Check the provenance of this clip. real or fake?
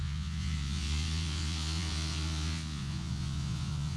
fake